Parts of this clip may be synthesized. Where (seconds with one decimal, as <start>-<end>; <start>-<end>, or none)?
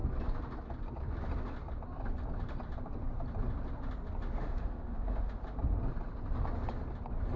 4.4-5.4